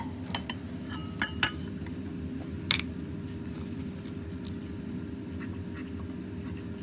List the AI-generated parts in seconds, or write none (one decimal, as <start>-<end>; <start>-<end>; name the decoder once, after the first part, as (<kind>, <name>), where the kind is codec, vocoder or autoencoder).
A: none